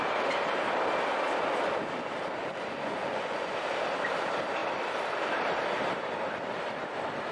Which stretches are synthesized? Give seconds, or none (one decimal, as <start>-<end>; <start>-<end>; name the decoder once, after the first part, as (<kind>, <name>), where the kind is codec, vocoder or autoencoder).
2.4-3.5 (vocoder, Vocos)